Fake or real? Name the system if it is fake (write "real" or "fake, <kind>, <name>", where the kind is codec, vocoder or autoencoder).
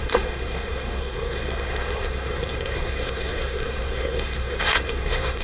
fake, codec, SNAC